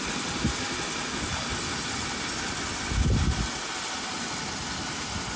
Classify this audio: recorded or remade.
recorded